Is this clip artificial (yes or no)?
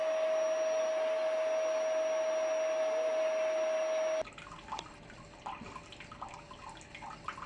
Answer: no